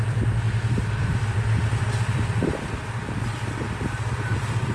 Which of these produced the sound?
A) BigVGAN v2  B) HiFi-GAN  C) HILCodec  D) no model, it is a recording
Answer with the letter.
A